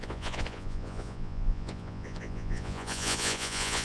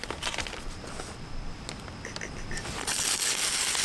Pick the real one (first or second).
second